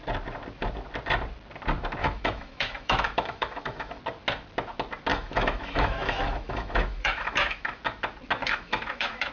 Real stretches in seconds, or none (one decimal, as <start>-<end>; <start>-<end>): 0.0-2.0; 4.0-5.1; 7.8-8.4